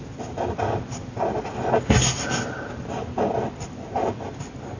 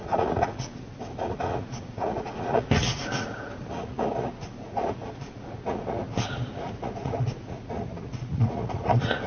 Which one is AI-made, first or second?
second